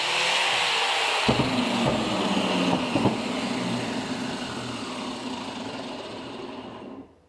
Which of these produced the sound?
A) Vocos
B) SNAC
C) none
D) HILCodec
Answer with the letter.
C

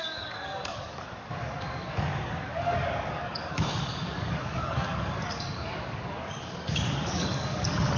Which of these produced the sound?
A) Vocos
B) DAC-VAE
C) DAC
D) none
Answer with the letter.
C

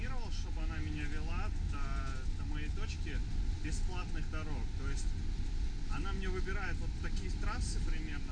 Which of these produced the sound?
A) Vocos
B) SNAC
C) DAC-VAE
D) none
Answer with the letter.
D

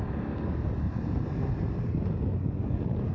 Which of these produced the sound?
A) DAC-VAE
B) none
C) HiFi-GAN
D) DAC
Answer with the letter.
B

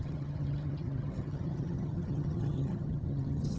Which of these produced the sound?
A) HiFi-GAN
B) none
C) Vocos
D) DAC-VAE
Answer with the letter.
A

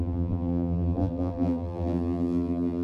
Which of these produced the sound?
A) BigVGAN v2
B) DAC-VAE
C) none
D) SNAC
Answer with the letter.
A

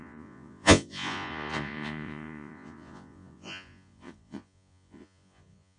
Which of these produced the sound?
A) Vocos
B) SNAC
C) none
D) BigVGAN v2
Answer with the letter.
A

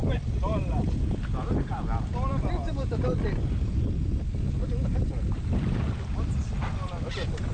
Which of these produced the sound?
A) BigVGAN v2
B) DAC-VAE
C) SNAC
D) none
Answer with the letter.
D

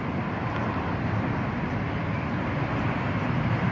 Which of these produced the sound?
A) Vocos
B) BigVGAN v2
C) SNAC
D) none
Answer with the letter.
B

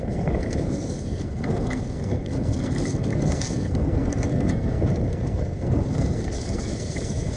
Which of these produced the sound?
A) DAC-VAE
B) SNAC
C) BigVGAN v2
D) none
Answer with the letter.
B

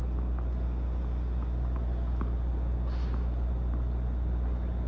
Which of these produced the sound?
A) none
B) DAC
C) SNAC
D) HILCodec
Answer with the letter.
A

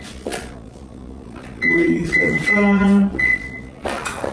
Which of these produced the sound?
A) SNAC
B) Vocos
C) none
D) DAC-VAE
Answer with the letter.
B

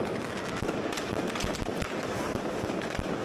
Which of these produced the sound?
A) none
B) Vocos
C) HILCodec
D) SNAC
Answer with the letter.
A